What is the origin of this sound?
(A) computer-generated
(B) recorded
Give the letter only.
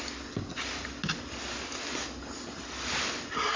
B